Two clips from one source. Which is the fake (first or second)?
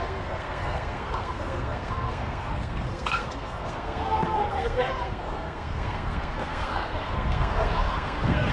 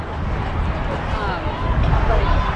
first